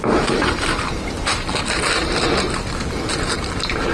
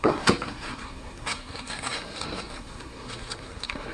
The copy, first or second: second